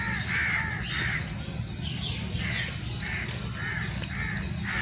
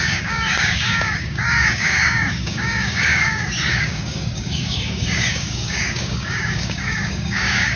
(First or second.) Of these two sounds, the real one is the first